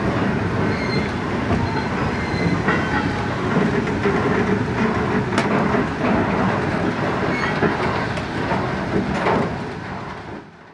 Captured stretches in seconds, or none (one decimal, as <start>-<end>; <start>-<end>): 0.0-10.7